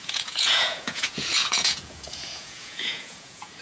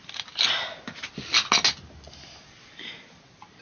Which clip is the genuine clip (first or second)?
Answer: second